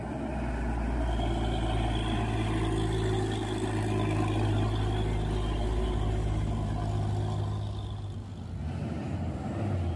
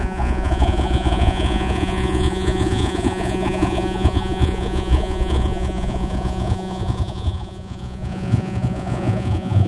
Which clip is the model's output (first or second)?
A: second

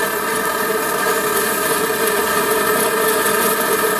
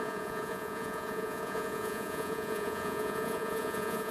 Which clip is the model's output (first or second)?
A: second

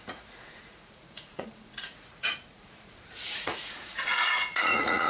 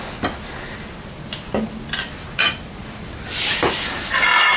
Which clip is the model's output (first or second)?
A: first